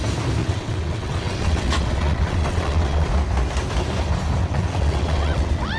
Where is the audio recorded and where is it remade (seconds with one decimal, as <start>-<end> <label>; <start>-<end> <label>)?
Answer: 0.0-0.4 recorded; 0.4-3.1 remade; 3.1-4.4 recorded; 4.4-5.8 remade